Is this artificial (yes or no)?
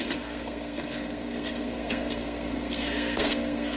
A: yes